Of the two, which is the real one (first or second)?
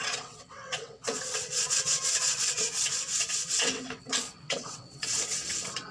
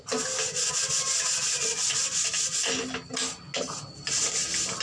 second